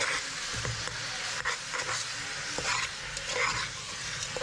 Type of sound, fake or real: real